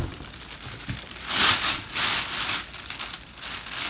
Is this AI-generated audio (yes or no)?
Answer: no